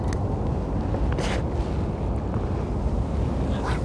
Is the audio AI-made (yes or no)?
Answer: no